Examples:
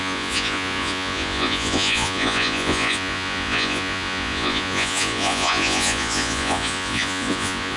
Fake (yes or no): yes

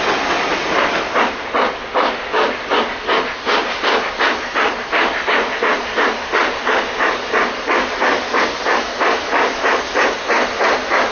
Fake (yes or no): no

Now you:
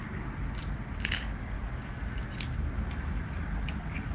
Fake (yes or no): no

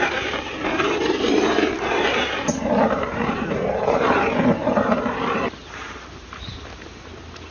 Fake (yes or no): yes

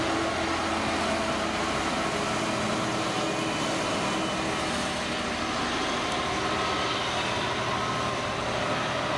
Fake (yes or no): no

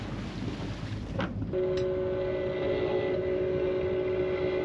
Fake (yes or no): no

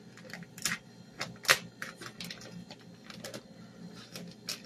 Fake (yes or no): no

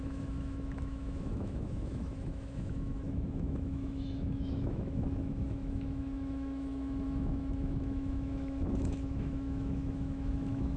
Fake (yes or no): yes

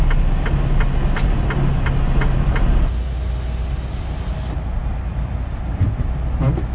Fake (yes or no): no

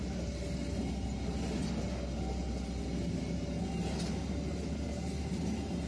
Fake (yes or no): no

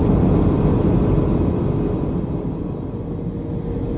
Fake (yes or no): no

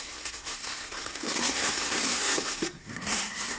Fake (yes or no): yes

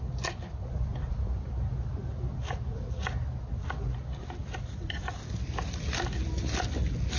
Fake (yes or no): no